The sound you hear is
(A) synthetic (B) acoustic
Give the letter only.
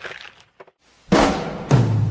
B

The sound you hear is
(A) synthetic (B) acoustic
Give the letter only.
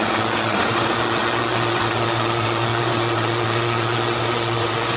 A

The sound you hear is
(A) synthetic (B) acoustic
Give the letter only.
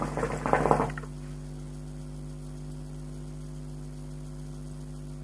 B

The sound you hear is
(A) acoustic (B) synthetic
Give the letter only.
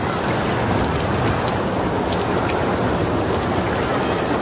A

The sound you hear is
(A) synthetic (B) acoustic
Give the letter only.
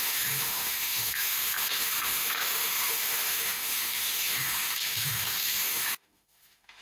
A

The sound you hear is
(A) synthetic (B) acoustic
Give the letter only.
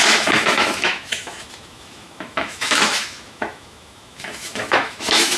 A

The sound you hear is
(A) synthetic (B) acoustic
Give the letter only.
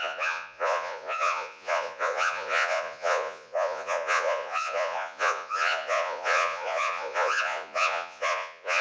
A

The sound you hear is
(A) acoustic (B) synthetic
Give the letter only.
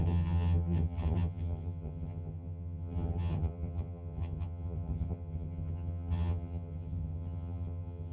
B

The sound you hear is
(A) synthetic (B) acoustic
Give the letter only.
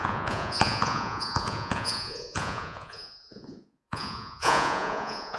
A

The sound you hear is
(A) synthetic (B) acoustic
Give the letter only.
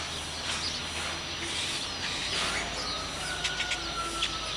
B